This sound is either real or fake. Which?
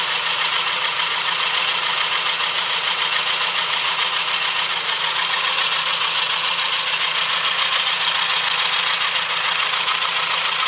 fake